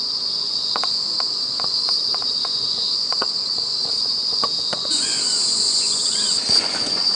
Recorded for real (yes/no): no